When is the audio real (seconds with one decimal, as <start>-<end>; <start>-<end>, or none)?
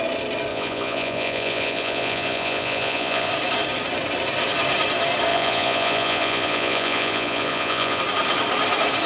0.0-0.5; 3.3-5.3; 8.0-9.1